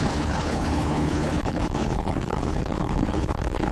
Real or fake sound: fake